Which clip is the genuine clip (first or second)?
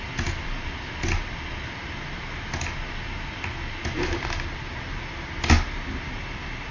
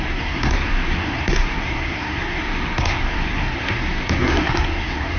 first